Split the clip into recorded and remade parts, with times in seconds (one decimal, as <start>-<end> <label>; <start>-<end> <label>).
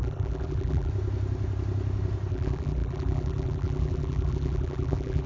0.0-0.9 remade; 0.9-2.3 recorded; 2.3-5.3 remade